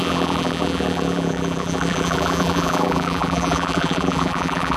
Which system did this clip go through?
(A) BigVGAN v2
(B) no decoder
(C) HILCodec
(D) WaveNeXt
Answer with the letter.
A